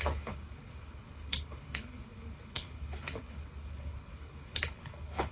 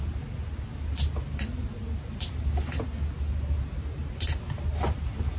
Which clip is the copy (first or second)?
first